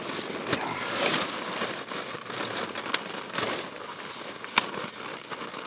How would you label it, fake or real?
real